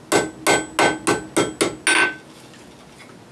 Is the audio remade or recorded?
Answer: recorded